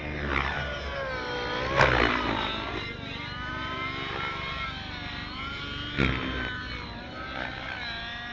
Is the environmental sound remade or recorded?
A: recorded